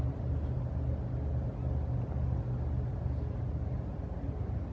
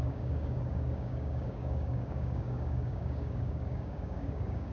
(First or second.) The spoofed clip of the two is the second